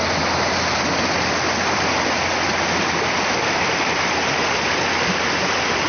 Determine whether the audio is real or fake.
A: real